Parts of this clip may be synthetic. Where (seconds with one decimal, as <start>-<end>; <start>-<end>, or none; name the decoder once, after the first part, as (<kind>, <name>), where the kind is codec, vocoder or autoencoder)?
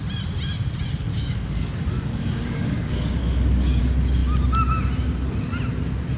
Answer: 1.1-3.8 (codec, DAC)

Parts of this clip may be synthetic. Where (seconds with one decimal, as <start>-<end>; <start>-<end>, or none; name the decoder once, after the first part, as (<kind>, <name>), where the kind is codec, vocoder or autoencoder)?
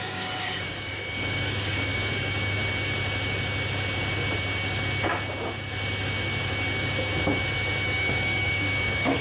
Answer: 0.0-2.6 (codec, DAC); 7.8-9.2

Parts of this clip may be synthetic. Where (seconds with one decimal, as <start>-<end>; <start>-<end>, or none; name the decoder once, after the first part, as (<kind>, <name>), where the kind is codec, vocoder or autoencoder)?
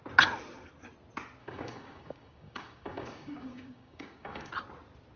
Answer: 1.4-4.5 (codec, DAC)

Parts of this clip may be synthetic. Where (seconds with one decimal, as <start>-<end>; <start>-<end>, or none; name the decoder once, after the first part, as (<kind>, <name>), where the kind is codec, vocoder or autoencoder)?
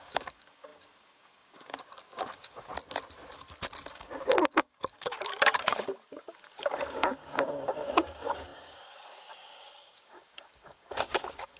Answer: 0.0-2.7 (codec, DAC); 3.9-11.6